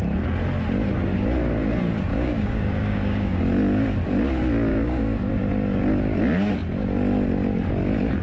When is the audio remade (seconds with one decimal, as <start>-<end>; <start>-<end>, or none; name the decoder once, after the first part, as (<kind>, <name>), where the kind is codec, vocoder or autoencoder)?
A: 2.1-3.4 (codec, DAC); 4.7-5.3